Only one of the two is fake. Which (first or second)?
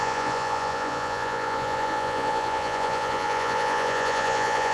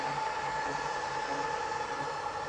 first